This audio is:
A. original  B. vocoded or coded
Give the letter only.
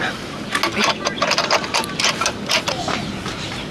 A